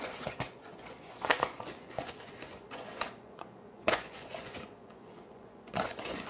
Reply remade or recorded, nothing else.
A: remade